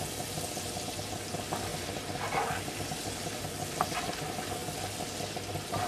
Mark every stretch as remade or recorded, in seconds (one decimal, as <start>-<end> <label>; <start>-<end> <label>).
0.0-5.9 recorded